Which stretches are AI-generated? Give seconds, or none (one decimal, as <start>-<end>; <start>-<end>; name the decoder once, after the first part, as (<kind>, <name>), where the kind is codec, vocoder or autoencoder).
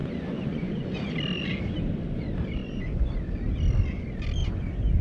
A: 0.0-1.1 (vocoder, Vocos); 2.6-3.1; 4.4-5.0